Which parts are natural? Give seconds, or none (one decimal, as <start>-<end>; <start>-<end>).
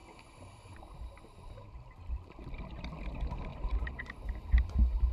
0.0-3.5; 4.5-5.1